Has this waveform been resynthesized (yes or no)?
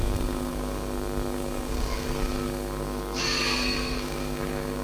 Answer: yes